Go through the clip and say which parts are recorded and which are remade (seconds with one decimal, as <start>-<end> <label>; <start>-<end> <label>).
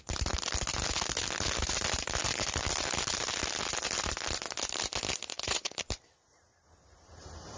0.0-5.3 recorded; 5.3-5.8 remade; 5.8-7.6 recorded